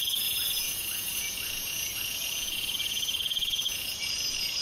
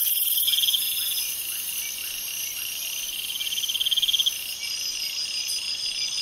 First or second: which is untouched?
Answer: second